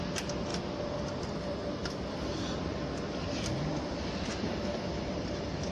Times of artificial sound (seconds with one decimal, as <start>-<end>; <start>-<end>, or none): none